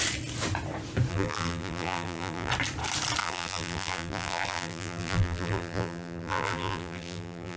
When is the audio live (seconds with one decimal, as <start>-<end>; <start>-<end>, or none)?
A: 0.0-1.1; 2.5-3.2